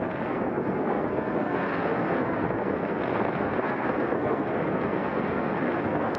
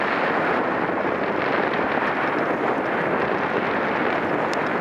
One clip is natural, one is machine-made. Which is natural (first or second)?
second